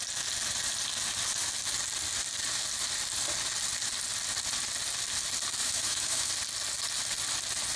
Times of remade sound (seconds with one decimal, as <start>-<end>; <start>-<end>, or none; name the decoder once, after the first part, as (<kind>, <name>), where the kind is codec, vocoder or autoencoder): 5.6-6.3 (autoencoder, DAC-VAE)